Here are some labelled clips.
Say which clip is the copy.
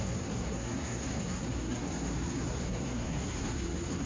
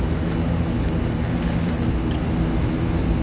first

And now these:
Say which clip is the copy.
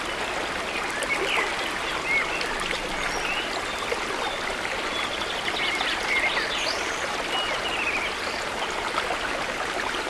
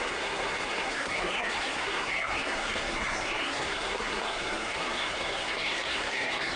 second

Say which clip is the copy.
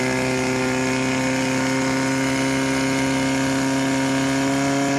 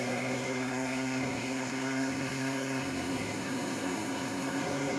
second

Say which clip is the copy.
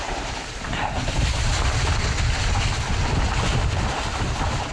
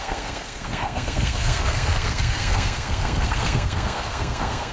second